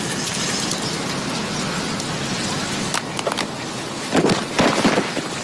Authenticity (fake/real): real